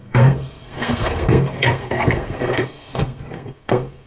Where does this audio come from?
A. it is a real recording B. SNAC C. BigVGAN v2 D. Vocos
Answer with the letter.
B